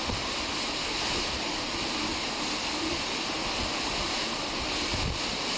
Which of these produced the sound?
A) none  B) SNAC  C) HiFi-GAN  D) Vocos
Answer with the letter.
A